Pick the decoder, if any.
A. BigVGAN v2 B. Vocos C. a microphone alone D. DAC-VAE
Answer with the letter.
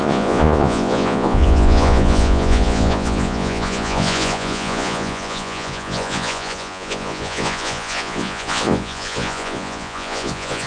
B